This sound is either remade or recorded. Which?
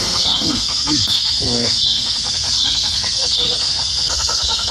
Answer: remade